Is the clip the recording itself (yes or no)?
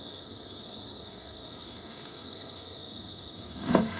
no